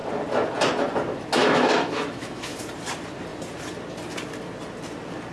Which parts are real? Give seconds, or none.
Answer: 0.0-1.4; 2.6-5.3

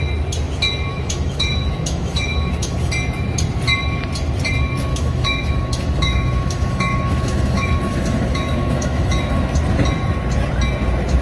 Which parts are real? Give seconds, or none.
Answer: 0.0-0.9; 2.9-4.9; 9.5-11.2